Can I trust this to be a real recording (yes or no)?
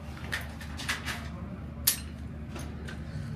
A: yes